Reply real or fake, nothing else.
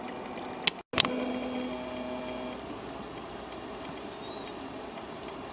real